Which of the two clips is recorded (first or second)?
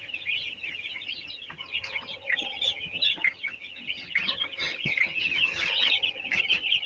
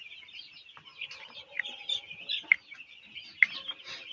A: second